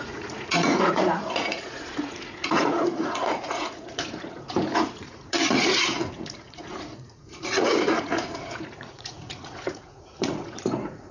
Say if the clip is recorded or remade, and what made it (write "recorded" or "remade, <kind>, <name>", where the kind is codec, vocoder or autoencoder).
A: remade, vocoder, Vocos